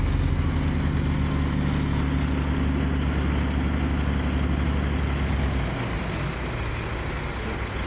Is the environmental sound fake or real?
real